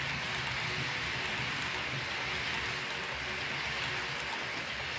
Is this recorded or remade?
recorded